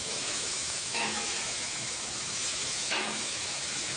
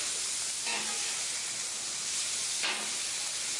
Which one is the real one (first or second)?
second